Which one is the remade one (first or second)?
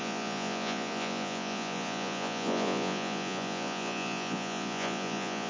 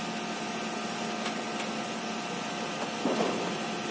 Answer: first